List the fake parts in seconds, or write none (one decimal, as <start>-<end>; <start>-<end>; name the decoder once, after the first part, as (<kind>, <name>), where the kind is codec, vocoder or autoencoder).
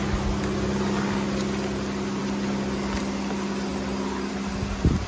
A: none